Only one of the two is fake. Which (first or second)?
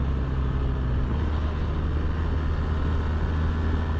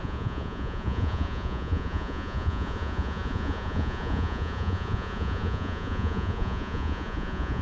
second